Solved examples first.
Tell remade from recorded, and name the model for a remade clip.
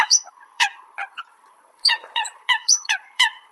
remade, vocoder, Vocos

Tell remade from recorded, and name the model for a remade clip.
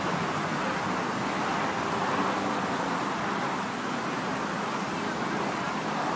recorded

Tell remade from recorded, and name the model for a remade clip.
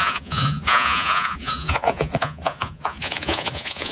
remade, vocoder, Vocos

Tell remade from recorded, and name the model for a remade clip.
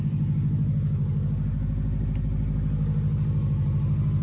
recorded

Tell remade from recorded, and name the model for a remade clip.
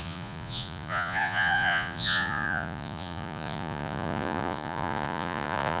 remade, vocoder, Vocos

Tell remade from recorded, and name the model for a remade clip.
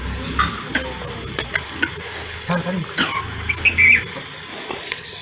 recorded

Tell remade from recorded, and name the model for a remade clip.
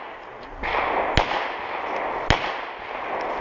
recorded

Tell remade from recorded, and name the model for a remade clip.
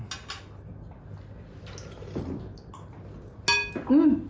recorded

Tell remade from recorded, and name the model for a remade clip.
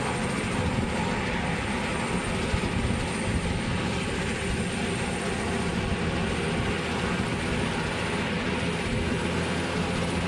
recorded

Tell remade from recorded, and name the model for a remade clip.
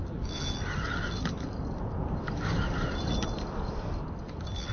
recorded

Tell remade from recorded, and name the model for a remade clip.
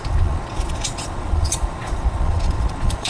remade, vocoder, Vocos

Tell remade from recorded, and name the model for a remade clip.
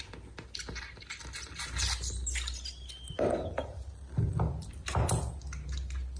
recorded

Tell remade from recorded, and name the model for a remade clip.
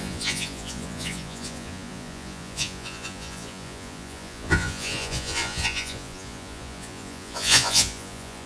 remade, vocoder, Vocos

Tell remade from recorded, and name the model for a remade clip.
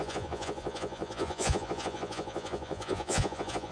remade, vocoder, Vocos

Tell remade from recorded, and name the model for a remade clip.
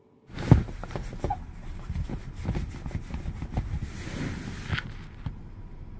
recorded